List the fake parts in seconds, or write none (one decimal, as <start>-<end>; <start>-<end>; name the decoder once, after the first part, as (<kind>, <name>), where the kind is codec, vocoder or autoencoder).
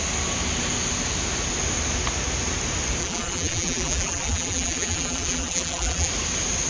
3.0-6.1 (vocoder, BigVGAN v2)